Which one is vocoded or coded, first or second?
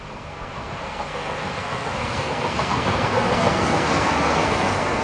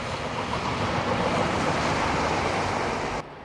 first